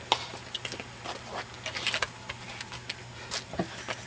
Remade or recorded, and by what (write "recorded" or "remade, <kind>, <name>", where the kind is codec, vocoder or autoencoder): recorded